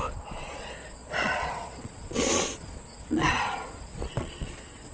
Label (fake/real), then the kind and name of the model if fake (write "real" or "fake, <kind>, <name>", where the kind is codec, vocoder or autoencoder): fake, vocoder, Vocos